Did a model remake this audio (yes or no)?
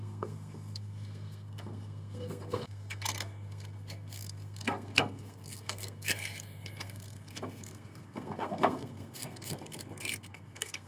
yes